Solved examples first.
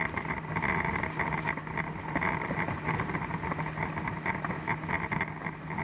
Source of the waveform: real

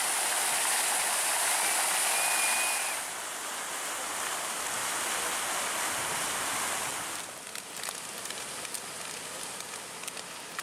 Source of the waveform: real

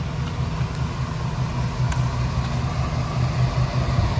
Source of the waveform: real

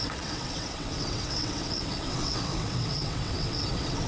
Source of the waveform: fake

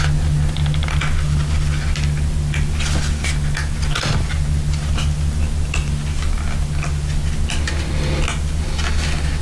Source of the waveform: real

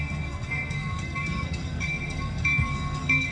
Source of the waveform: fake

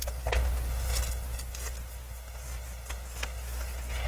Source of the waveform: real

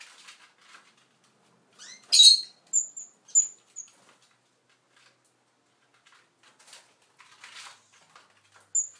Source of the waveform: real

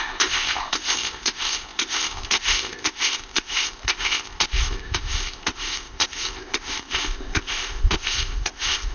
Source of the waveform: fake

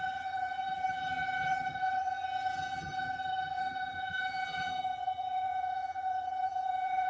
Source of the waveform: fake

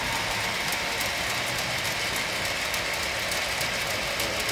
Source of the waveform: real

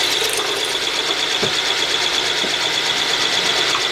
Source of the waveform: real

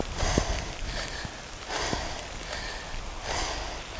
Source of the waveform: real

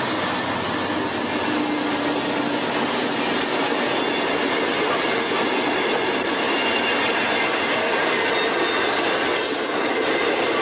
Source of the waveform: real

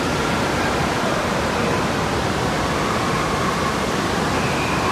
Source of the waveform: real